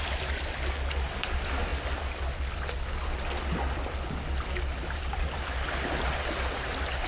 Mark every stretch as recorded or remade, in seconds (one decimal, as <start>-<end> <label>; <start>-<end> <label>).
0.0-7.1 recorded